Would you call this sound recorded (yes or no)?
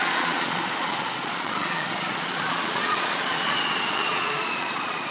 no